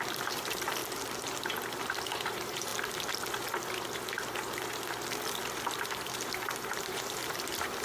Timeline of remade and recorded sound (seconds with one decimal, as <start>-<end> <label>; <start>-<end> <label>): 0.0-0.8 remade; 0.8-1.8 recorded; 1.8-2.7 remade; 2.7-5.8 recorded; 5.8-7.8 remade